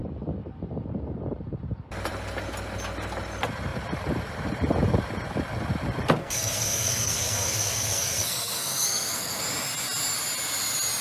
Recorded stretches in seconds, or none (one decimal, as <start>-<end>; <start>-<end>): 0.0-6.2; 9.4-11.0